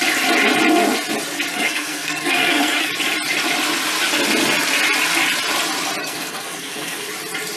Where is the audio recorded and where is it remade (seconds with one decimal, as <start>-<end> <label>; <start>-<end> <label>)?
0.0-1.5 recorded; 1.5-2.9 remade; 2.9-6.0 recorded; 6.0-7.1 remade; 7.1-7.6 recorded